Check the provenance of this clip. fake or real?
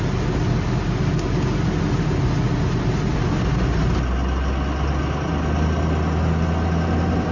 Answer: real